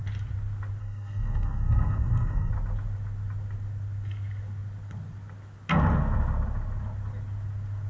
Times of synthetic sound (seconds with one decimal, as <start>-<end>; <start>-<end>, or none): 0.8-2.5